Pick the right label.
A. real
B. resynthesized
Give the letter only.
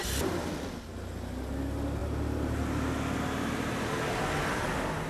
A